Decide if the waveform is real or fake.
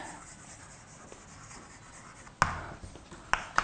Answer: real